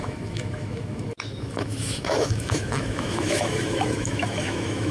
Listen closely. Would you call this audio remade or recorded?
remade